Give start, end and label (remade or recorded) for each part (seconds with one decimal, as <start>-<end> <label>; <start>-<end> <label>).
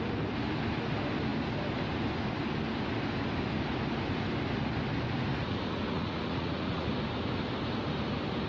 0.0-5.3 recorded; 5.3-6.9 remade; 6.9-8.5 recorded